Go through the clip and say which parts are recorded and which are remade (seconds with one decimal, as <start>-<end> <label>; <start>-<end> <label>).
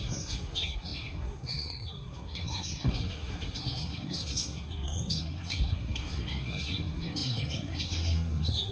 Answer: 0.0-8.7 remade